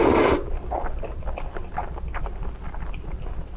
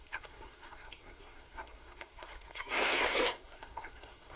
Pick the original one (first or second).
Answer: first